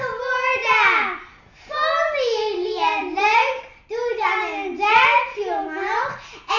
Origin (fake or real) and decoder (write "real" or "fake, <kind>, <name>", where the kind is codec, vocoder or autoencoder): real